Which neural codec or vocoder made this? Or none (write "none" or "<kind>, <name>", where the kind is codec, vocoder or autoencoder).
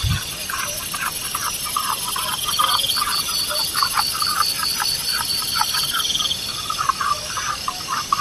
none